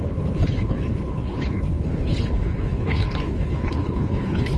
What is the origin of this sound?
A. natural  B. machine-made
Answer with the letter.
B